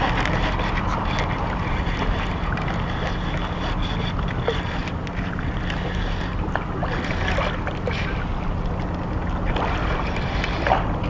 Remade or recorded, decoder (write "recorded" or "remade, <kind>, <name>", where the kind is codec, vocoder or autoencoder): recorded